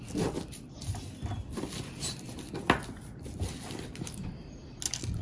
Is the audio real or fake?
real